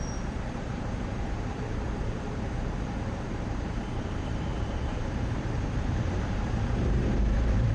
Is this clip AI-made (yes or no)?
yes